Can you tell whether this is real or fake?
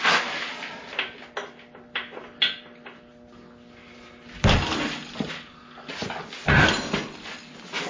real